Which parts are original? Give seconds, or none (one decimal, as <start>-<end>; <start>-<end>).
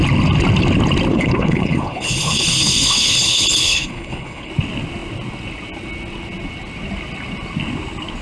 0.0-1.1; 4.5-8.2